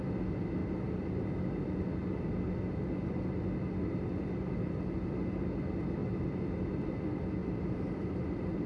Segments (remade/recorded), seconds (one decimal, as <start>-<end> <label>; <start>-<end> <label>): 0.0-7.4 recorded; 7.4-8.7 remade